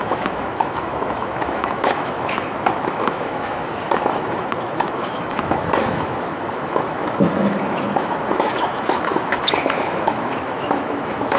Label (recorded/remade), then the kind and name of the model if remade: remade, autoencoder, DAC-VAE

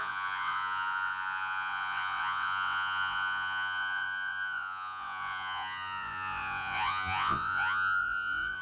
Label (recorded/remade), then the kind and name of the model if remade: remade, vocoder, Vocos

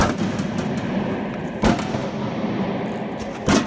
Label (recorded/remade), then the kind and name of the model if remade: recorded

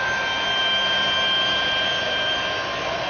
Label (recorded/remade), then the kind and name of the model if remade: recorded